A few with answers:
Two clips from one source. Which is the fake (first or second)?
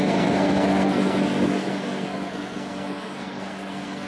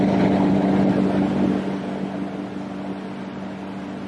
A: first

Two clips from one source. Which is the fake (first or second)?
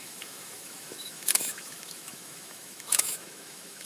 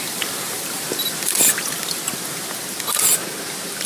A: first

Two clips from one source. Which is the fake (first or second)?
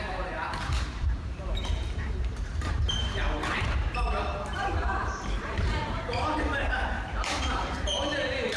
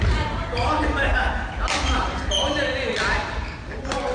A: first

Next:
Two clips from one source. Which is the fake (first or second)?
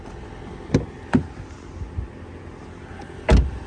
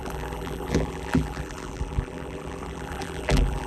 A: second